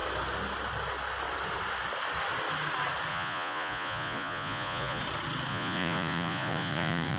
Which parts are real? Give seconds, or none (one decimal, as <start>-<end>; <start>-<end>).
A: 0.0-3.1; 5.0-5.5